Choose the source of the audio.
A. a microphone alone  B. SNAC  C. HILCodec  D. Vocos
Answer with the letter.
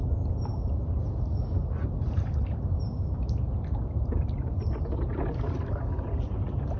A